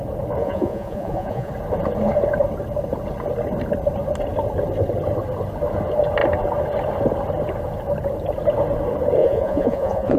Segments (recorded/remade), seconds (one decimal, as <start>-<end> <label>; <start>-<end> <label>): 0.0-0.4 recorded; 0.4-1.5 remade; 1.5-9.2 recorded; 9.2-10.2 remade